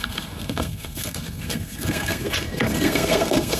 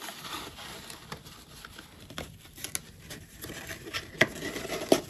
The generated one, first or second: first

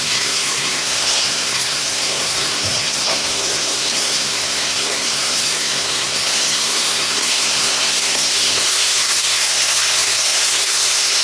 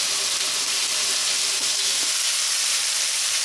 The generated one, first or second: first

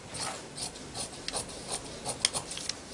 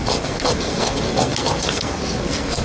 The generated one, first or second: second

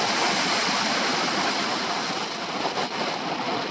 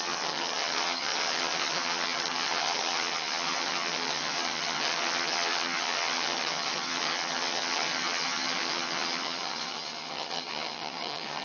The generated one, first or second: second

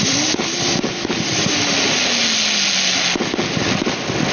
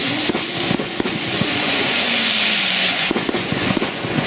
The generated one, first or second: second